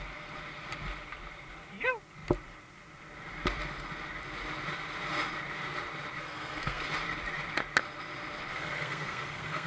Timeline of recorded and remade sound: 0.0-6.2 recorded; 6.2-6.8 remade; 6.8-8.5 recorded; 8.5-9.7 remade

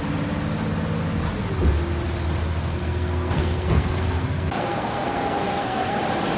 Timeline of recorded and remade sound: 0.0-2.7 recorded; 2.7-6.0 remade; 6.0-6.4 recorded

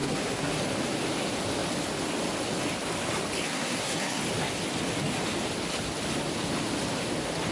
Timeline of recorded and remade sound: 0.0-0.6 remade; 0.6-3.5 recorded; 3.5-4.2 remade; 4.2-7.5 recorded

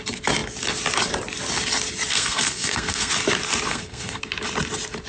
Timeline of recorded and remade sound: 0.0-2.1 recorded; 2.1-3.1 remade; 3.1-3.7 recorded; 3.7-4.2 remade; 4.2-5.1 recorded

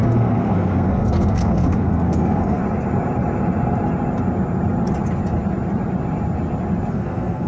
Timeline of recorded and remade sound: 0.0-2.6 remade; 2.6-6.9 recorded; 6.9-7.5 remade

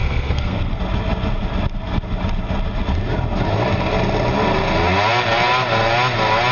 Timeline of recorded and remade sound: 0.0-0.8 remade; 0.8-6.5 recorded